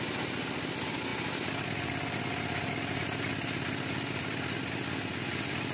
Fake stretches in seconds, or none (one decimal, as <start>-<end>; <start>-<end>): none